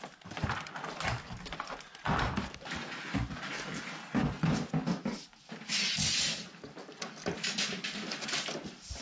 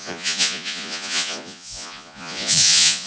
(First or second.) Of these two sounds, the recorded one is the first